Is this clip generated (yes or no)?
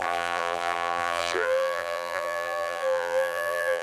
yes